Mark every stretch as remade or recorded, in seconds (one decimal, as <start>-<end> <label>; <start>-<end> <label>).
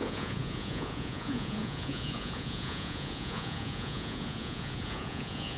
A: 0.0-5.6 remade